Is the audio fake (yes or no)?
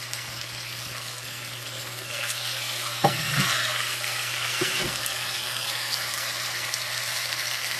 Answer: yes